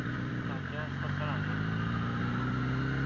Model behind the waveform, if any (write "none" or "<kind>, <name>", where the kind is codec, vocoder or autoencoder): none